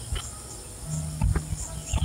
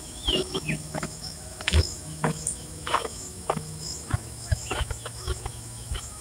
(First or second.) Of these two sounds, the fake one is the second